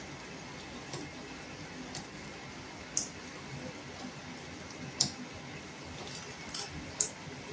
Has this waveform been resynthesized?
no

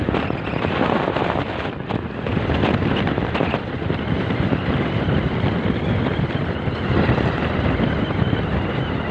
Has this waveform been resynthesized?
no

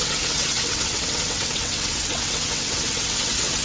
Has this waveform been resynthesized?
yes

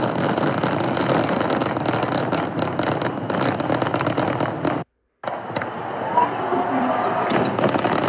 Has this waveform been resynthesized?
no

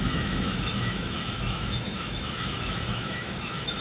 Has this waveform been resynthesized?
yes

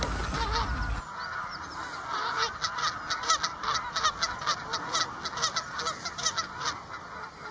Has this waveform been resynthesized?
no